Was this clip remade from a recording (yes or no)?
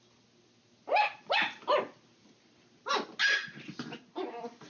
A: no